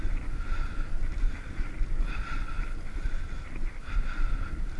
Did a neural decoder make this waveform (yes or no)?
no